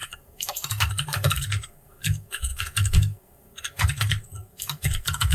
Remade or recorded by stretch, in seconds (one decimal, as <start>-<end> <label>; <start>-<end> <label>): 0.0-5.3 remade